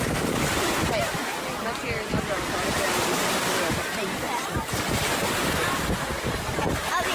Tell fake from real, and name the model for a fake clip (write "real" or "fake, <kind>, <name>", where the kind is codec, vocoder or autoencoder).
fake, vocoder, BigVGAN v2